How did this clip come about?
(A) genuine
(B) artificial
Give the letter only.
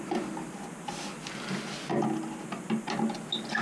A